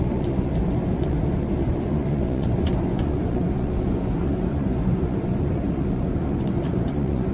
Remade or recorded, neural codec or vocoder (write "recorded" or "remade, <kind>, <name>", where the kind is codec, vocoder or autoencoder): remade, vocoder, Vocos